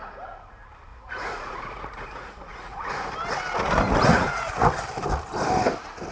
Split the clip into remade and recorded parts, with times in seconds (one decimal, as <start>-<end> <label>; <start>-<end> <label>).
0.0-0.9 recorded; 0.9-2.9 remade; 2.9-4.1 recorded; 4.1-4.7 remade; 4.7-6.1 recorded